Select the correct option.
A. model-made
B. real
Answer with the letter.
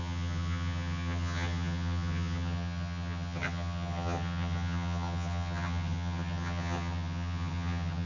A